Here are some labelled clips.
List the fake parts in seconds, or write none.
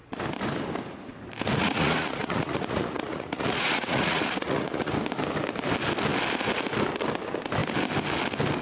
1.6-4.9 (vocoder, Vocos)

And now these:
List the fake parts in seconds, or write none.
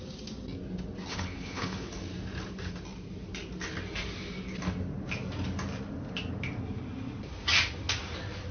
1.1-1.9 (codec, HILCodec)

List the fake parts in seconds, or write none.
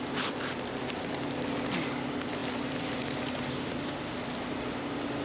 2.4-3.7 (vocoder, BigVGAN v2)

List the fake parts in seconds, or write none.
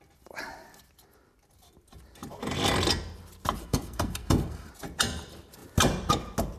3.6-4.7 (codec, SNAC)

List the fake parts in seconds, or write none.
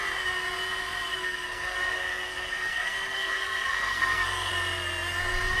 1.1-4.5 (codec, SNAC)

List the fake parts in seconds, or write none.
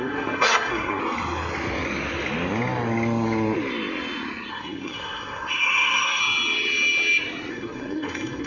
0.0-1.0 (codec, SNAC); 4.5-6.2; 7.5-8.5